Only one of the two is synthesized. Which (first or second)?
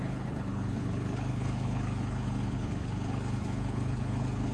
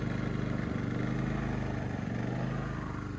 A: first